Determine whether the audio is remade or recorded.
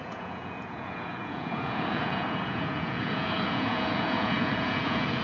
remade